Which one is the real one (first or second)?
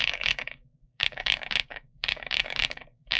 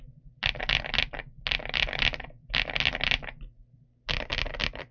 second